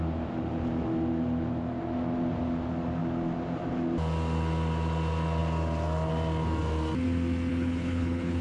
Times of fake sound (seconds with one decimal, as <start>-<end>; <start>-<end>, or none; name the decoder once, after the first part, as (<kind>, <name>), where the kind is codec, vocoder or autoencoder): 7.5-8.4 (codec, HILCodec)